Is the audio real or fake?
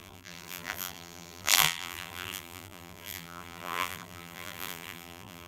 fake